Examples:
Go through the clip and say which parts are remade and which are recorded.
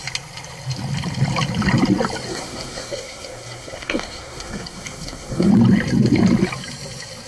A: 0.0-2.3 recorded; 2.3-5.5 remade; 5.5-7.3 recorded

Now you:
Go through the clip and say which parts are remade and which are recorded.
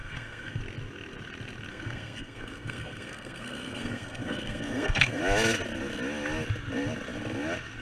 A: 0.0-0.6 remade; 0.6-1.7 recorded; 1.7-5.2 remade; 5.2-7.8 recorded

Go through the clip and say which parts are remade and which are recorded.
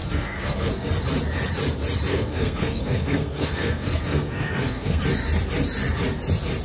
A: 0.0-0.7 remade; 0.7-2.1 recorded; 2.1-5.0 remade; 5.0-6.6 recorded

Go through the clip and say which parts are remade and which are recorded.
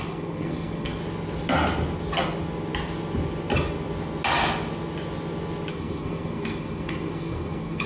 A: 0.0-1.0 remade; 1.0-5.7 recorded; 5.7-7.9 remade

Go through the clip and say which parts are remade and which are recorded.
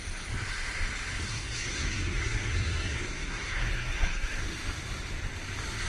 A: 0.0-1.3 recorded; 1.3-4.4 remade; 4.4-5.9 recorded